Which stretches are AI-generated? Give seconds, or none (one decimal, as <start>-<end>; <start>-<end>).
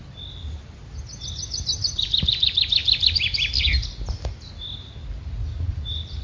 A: none